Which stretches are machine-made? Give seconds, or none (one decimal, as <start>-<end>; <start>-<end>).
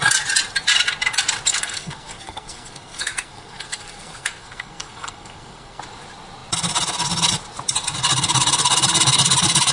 1.5-5.8